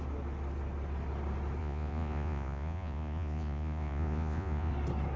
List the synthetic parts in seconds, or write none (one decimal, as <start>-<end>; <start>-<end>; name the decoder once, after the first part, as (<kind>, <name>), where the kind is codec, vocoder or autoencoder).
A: 1.6-4.7 (vocoder, Vocos)

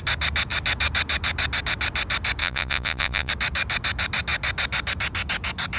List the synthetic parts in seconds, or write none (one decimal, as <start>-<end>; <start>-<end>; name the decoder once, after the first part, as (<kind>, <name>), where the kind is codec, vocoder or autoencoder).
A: 2.4-3.3 (vocoder, Vocos)

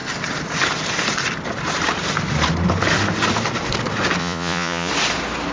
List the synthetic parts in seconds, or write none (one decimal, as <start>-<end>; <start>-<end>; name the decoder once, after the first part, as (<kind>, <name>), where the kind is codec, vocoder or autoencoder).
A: 4.2-4.9 (vocoder, Vocos)

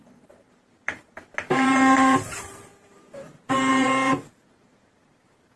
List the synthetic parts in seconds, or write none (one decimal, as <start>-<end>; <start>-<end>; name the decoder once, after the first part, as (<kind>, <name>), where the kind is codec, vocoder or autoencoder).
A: 0.0-5.6 (vocoder, BigVGAN v2)

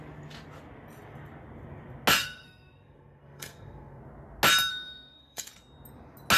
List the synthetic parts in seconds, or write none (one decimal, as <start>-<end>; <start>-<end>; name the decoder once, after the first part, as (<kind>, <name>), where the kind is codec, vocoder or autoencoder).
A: 2.2-4.0 (codec, SNAC); 4.7-5.5

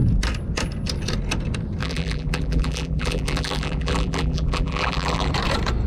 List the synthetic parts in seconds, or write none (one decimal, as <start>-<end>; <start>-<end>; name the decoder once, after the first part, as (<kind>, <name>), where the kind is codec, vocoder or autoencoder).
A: 1.8-5.3 (vocoder, BigVGAN v2)